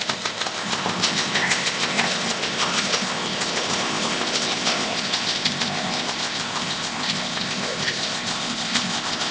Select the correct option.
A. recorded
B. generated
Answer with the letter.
B